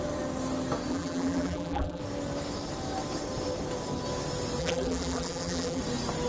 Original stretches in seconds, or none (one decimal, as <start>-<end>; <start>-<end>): 0.0-0.9; 2.0-4.6; 5.8-6.3

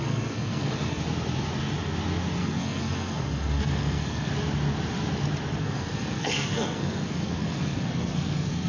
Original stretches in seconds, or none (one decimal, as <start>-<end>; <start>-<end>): 1.0-2.4; 4.3-5.6

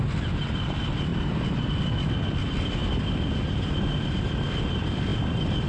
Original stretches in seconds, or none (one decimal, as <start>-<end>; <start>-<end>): 0.0-5.7

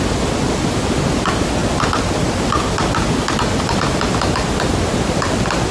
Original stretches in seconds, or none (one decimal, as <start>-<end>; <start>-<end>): 0.0-5.7

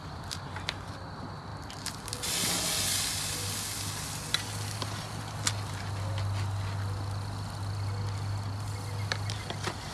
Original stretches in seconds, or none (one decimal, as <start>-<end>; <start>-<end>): 0.0-9.9

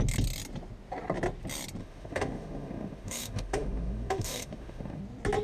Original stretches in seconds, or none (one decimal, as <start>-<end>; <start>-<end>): 0.0-1.8; 5.0-5.4